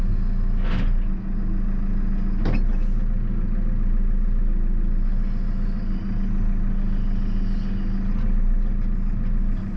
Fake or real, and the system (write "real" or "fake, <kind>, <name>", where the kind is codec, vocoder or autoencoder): real